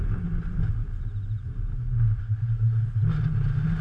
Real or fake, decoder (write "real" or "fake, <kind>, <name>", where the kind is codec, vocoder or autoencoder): real